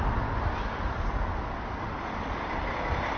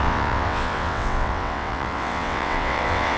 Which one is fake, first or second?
second